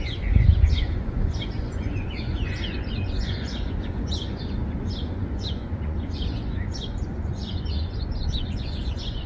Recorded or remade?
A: remade